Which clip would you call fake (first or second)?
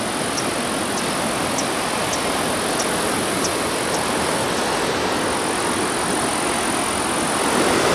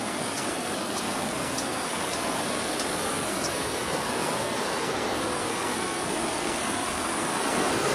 second